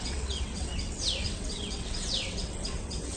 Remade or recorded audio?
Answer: remade